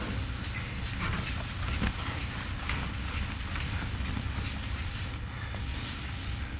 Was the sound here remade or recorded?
recorded